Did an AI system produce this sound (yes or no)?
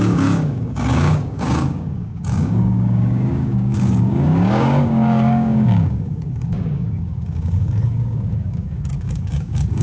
yes